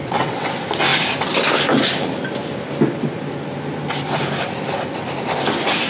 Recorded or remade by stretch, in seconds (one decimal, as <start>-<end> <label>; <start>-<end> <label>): 0.0-0.5 remade; 0.5-5.9 recorded